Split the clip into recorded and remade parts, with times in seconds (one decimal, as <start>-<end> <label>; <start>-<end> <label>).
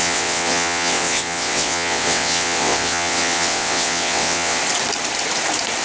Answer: 0.0-4.6 remade; 4.6-5.8 recorded